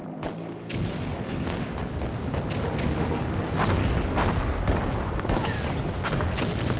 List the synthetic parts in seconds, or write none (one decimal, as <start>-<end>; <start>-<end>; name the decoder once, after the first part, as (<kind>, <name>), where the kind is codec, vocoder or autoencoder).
0.0-1.7 (codec, DAC); 3.8-6.8